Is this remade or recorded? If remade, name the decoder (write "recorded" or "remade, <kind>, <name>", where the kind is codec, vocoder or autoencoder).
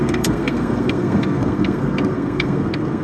remade, codec, SNAC